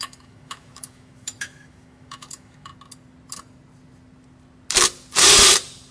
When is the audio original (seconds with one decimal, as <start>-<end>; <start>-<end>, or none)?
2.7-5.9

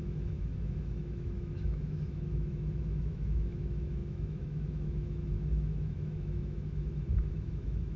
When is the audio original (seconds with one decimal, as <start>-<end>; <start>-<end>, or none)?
none

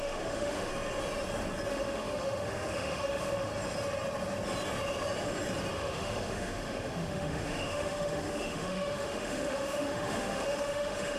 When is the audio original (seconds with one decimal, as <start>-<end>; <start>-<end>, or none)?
0.7-1.7; 3.5-5.7